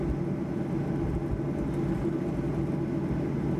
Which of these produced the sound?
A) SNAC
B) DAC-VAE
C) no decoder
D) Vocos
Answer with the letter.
C